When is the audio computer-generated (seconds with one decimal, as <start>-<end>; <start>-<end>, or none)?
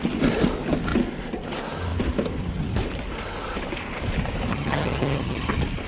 4.5-5.5